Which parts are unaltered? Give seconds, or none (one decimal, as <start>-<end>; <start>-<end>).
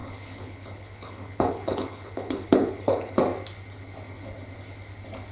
3.2-5.3